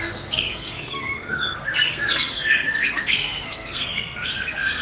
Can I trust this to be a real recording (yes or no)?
no